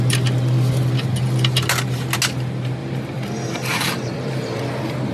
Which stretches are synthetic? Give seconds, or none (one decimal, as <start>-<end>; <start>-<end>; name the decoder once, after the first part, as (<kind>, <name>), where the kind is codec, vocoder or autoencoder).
2.8-4.6 (vocoder, BigVGAN v2)